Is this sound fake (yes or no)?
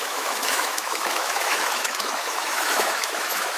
yes